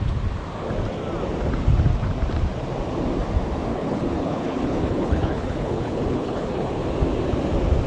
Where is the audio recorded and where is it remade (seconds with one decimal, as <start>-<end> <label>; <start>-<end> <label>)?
0.0-3.7 recorded; 3.7-6.8 remade; 6.8-7.9 recorded